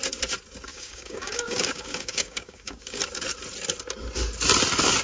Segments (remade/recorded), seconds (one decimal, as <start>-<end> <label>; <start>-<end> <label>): 0.0-0.7 recorded; 0.7-3.0 remade; 3.0-5.0 recorded